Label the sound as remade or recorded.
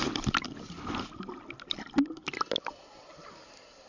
recorded